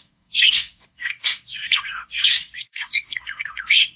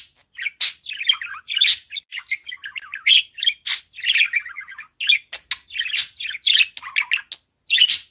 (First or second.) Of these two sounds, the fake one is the first